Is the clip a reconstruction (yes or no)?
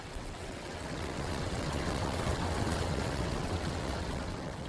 yes